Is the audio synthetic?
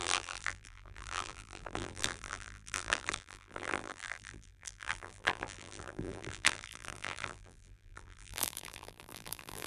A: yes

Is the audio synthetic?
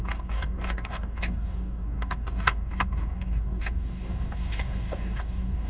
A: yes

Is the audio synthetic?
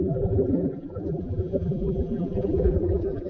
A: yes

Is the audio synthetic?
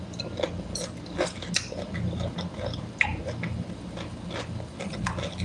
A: no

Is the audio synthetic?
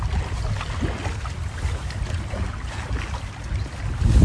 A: no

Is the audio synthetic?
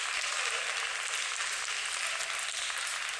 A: no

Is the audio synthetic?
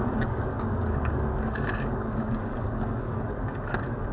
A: yes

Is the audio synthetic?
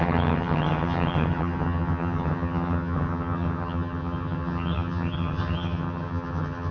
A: yes